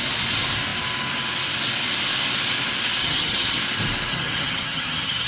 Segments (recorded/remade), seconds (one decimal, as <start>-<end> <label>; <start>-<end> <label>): 0.0-3.0 recorded; 3.0-3.6 remade; 3.6-4.1 recorded; 4.1-5.3 remade

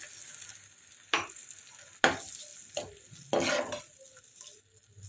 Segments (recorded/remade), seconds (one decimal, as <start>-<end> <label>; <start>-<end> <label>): 0.0-5.1 recorded

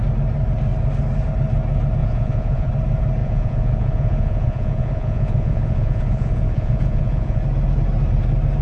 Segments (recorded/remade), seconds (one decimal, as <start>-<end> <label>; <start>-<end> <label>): 0.0-2.0 recorded; 2.0-2.7 remade; 2.7-3.2 recorded; 3.2-7.4 remade; 7.4-8.6 recorded

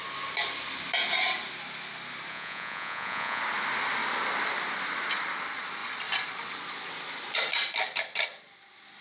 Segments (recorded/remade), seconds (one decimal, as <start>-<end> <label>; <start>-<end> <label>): 0.0-2.3 recorded; 2.3-3.4 remade; 3.4-9.0 recorded